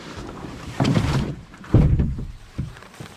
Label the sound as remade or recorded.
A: remade